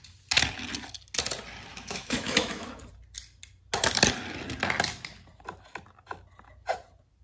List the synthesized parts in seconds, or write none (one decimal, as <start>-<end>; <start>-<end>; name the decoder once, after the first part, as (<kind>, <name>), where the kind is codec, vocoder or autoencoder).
1.7-2.8 (autoencoder, DAC-VAE)

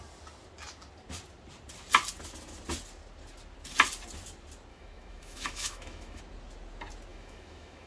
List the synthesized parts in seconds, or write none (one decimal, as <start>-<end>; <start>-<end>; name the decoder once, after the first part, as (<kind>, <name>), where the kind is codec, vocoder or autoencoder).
4.7-6.2 (autoencoder, DAC-VAE); 7.1-7.9

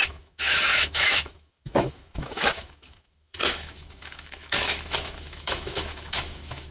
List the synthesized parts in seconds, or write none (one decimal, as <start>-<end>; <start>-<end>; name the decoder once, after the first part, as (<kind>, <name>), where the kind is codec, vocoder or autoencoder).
0.0-6.7 (autoencoder, DAC-VAE)